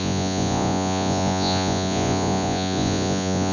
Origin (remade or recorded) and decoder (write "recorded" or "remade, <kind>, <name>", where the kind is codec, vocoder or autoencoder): remade, vocoder, Vocos